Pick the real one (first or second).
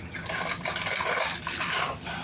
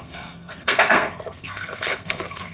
first